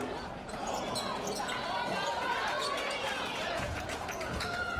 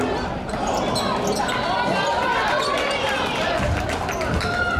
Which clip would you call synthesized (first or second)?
first